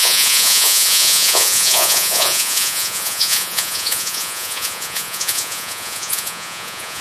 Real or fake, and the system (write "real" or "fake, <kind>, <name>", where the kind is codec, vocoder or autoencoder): fake, vocoder, Vocos